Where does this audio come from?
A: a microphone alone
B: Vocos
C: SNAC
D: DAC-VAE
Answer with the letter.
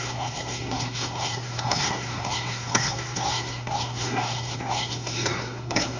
C